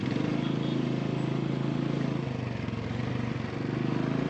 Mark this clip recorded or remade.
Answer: recorded